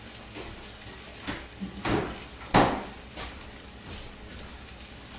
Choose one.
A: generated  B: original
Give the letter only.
B